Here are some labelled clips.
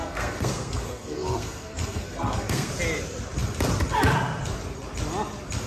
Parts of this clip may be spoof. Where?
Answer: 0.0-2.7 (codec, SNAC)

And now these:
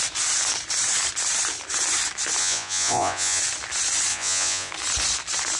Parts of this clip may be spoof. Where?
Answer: 2.4-3.4 (vocoder, Vocos); 4.1-4.7